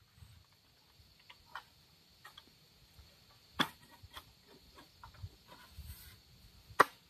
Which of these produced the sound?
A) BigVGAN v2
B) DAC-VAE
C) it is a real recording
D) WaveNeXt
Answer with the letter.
C